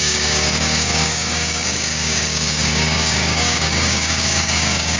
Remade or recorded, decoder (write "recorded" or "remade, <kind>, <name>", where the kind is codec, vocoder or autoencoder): remade, codec, DAC